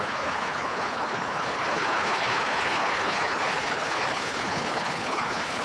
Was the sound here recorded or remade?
remade